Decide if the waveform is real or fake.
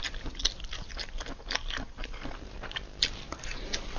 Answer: real